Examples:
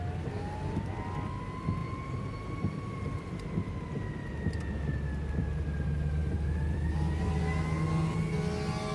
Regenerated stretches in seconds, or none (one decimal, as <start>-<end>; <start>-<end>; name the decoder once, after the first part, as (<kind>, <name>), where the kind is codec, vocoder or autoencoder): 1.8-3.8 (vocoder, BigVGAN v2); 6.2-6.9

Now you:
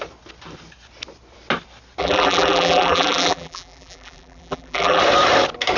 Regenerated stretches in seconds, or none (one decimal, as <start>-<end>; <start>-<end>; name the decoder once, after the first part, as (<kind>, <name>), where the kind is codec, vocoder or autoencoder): 2.0-5.0 (vocoder, BigVGAN v2)

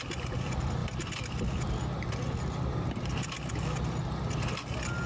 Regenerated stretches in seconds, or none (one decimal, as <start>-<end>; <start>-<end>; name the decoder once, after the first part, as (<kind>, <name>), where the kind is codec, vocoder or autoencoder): none

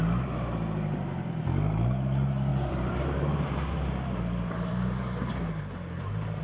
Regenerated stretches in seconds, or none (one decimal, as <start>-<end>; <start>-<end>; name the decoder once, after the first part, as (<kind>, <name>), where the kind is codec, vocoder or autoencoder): 2.5-5.2 (vocoder, BigVGAN v2)